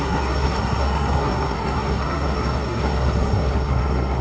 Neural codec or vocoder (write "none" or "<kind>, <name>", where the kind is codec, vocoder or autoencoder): codec, SNAC